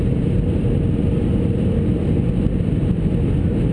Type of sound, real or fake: real